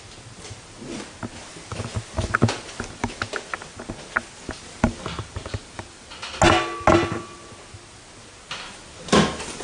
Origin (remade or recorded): recorded